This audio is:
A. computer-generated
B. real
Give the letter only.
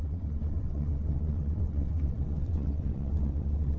A